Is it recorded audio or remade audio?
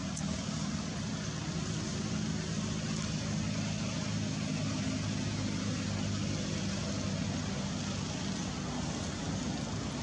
recorded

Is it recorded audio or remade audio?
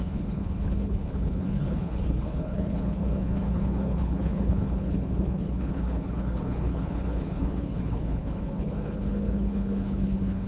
remade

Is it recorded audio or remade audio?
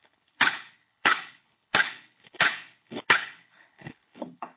remade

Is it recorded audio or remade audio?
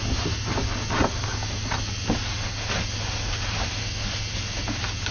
recorded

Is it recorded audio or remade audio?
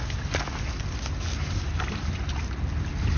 recorded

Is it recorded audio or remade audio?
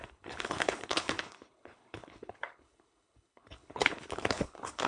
remade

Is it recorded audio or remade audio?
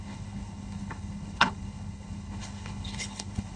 remade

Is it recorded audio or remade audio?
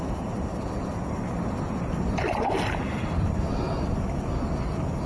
recorded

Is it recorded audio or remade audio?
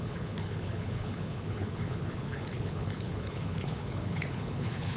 remade